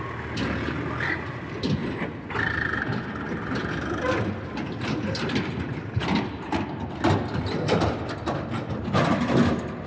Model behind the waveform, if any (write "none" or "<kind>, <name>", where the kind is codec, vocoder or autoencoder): none